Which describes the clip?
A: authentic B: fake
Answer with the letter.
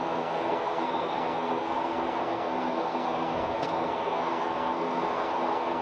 B